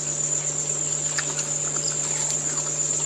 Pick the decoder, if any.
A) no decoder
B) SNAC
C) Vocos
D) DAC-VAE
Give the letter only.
A